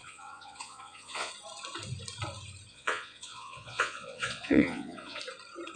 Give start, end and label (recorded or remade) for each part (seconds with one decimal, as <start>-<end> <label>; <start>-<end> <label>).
0.0-1.3 remade; 1.3-2.7 recorded; 2.7-5.2 remade; 5.2-5.8 recorded